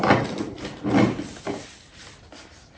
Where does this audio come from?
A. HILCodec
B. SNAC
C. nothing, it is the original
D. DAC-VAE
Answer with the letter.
C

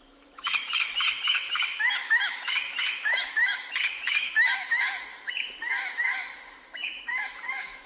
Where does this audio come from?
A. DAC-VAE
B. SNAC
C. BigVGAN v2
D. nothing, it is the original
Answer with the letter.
A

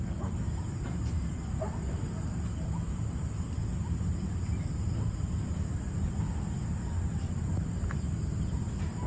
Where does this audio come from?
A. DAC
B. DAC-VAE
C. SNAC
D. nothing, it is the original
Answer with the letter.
D